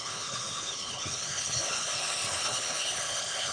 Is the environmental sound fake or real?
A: fake